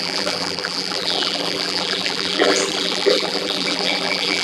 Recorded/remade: remade